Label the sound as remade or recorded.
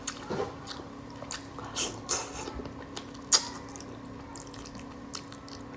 recorded